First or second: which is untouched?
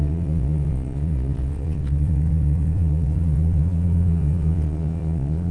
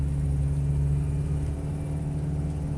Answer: second